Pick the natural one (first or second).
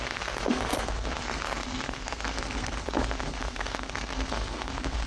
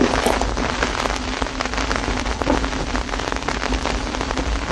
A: second